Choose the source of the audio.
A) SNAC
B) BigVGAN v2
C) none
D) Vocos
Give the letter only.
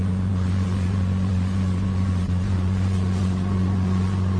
D